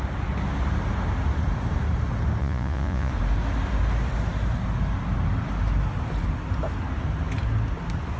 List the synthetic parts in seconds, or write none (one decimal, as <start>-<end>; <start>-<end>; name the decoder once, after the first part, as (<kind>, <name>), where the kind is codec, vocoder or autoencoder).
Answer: 2.4-3.1 (vocoder, Vocos)